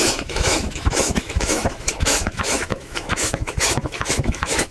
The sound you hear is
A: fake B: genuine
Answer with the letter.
A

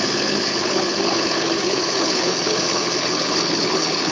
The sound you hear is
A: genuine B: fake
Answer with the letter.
B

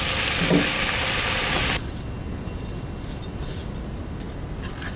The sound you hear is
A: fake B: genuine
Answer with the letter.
B